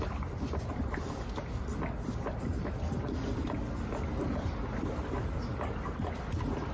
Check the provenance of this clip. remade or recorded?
recorded